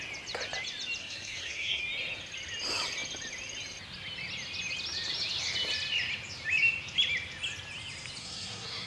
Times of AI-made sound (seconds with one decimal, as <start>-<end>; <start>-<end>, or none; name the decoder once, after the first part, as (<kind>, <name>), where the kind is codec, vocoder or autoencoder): 1.0-1.8 (codec, SNAC); 8.2-8.9